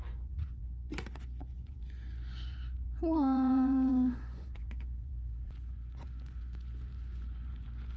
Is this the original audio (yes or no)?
no